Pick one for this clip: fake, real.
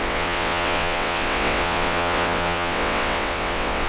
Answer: fake